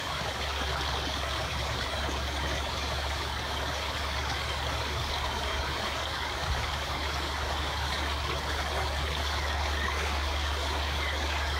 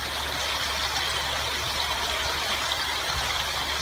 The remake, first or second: first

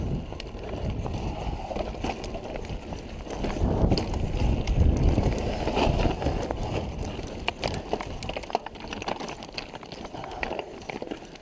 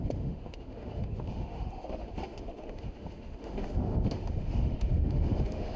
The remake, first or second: second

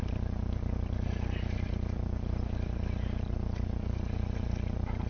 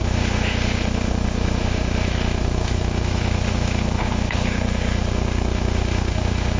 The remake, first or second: second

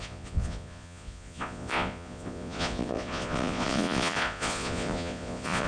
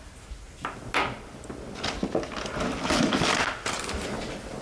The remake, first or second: first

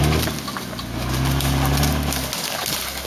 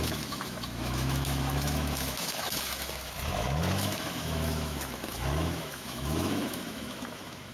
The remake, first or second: second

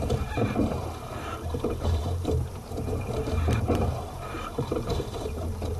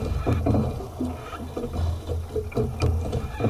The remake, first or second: first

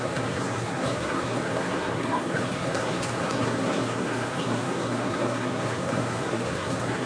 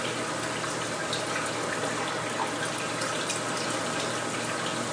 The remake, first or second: first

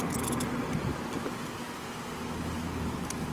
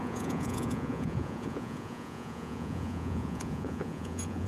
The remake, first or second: second